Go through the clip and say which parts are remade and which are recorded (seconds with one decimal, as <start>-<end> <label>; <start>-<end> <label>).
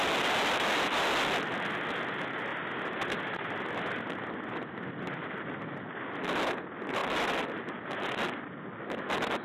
0.0-9.4 recorded